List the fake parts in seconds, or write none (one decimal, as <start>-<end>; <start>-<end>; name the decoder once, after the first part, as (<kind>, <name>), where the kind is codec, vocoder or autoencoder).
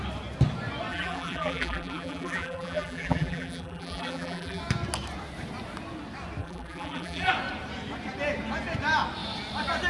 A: 0.9-4.6 (vocoder, BigVGAN v2); 6.4-7.3